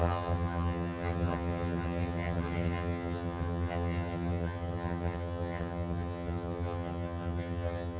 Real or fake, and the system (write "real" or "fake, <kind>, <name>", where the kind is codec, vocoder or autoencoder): fake, vocoder, HiFi-GAN